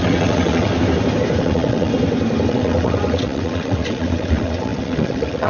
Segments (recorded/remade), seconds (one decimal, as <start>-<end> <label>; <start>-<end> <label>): 0.0-0.7 remade; 0.7-1.4 recorded; 1.4-1.9 remade; 1.9-2.5 recorded; 2.5-5.5 remade